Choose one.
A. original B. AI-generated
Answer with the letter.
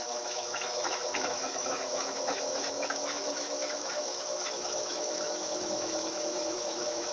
B